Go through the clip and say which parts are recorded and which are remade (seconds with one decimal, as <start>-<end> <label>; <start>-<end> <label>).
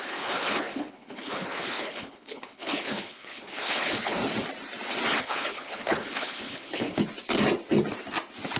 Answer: 0.0-4.2 remade; 4.2-5.2 recorded; 5.2-7.0 remade; 7.0-8.6 recorded